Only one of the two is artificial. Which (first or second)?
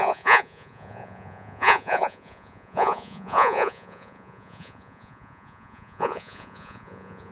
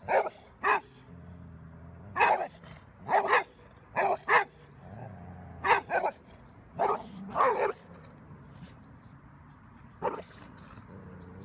first